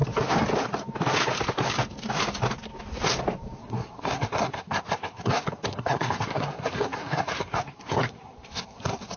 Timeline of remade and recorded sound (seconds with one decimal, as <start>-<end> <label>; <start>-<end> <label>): 0.0-3.6 recorded; 3.6-9.2 remade